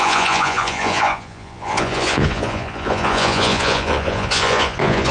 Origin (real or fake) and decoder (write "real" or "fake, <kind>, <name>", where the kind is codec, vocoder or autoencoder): fake, vocoder, Vocos